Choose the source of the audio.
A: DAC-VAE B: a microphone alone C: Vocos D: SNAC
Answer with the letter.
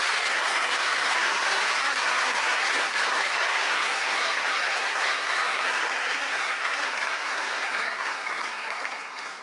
D